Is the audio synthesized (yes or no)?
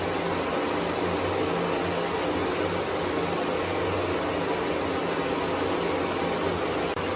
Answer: no